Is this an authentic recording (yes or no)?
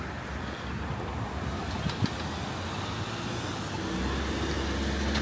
yes